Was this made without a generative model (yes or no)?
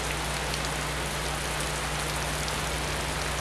yes